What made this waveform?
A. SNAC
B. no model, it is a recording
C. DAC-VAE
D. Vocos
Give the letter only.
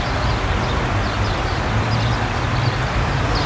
B